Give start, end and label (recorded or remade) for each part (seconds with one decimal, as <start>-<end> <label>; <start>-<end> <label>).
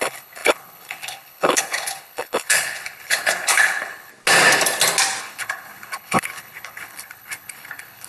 0.0-4.1 remade; 4.1-5.2 recorded; 5.2-8.1 remade